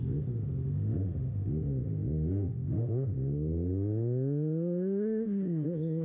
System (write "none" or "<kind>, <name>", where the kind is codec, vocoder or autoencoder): autoencoder, DAC-VAE